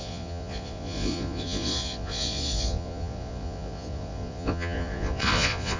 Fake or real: fake